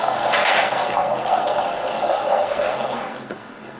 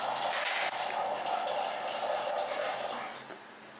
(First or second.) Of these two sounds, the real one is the second